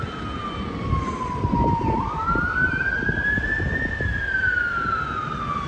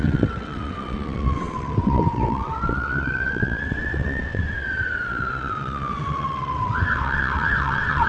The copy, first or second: second